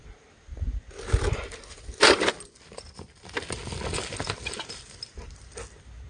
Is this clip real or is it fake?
real